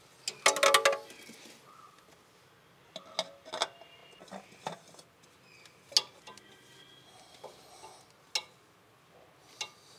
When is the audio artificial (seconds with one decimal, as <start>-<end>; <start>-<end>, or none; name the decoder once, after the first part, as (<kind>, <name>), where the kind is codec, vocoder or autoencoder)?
none